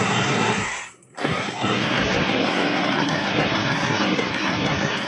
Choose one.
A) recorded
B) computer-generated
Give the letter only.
B